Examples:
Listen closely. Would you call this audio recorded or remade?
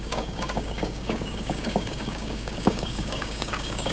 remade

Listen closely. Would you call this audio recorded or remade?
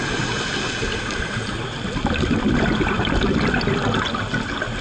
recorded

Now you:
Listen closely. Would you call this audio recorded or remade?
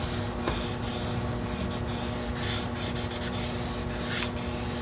recorded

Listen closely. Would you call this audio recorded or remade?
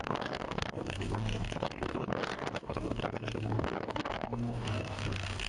remade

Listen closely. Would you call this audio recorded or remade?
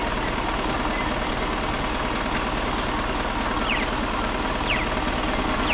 recorded